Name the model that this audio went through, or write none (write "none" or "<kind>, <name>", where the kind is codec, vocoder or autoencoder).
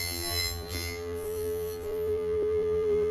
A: vocoder, BigVGAN v2